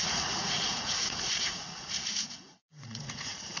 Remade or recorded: remade